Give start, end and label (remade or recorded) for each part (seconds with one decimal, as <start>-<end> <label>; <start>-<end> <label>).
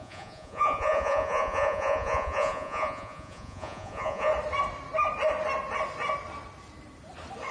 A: 0.0-4.3 remade; 4.3-7.5 recorded